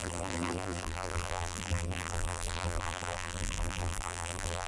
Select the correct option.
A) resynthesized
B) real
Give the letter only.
A